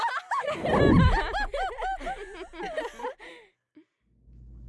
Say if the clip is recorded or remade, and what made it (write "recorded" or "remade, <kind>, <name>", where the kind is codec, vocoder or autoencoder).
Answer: recorded